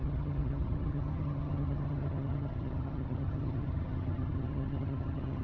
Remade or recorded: remade